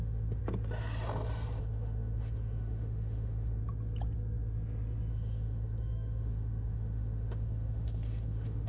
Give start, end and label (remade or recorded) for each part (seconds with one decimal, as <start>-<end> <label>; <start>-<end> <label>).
0.0-0.4 remade; 0.4-1.6 recorded; 1.6-3.6 remade; 3.6-5.1 recorded; 5.1-8.7 remade